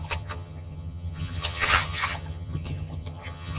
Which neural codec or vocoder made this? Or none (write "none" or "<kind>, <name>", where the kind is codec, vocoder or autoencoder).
vocoder, HiFi-GAN